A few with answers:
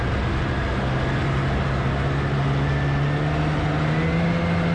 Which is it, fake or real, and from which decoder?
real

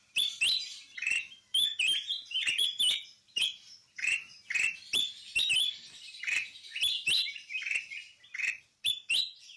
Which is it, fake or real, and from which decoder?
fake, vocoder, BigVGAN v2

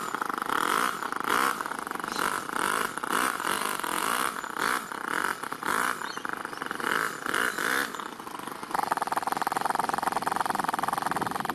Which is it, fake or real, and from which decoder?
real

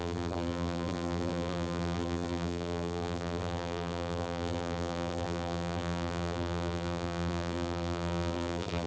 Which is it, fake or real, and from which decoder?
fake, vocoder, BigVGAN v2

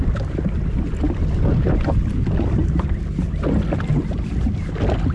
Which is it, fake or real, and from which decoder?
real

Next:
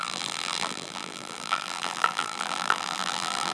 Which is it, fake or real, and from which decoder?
fake, vocoder, BigVGAN v2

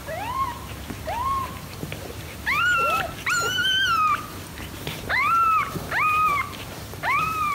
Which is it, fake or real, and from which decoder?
fake, vocoder, BigVGAN v2